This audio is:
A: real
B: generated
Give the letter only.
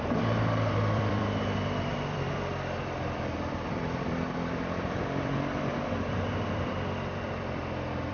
B